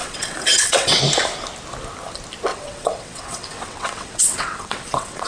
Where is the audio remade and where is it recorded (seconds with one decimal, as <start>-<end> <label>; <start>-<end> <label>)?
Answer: 0.0-1.0 remade; 1.0-2.5 recorded; 2.5-5.3 remade